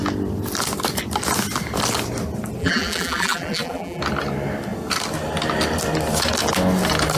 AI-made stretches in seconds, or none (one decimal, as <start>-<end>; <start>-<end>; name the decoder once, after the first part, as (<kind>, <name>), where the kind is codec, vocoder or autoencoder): 2.6-4.0 (vocoder, BigVGAN v2)